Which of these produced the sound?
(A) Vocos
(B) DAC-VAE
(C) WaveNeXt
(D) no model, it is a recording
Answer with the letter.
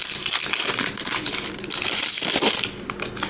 D